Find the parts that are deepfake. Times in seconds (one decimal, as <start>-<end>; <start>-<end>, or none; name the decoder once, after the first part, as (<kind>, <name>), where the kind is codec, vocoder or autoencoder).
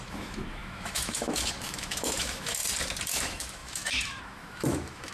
0.0-2.6 (autoencoder, DAC-VAE); 3.1-5.1